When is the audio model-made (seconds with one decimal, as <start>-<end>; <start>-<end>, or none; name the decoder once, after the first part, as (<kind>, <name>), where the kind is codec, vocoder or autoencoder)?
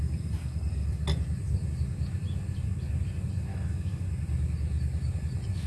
3.5-4.0 (autoencoder, DAC-VAE)